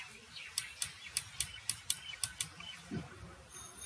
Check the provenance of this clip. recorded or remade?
recorded